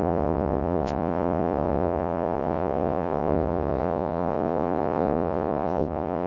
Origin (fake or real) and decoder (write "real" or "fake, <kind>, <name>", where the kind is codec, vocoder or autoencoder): fake, vocoder, Vocos